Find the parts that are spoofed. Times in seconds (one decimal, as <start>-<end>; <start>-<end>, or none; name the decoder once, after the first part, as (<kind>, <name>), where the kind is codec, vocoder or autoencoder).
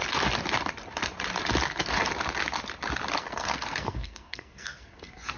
3.2-5.4 (codec, SNAC)